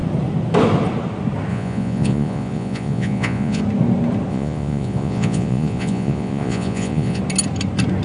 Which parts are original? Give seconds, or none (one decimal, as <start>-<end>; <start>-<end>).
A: 0.0-1.5; 3.6-4.3; 7.2-8.0